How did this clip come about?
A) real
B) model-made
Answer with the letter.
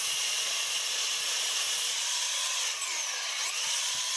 B